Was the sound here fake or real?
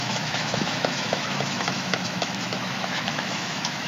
fake